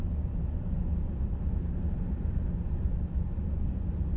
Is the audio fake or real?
real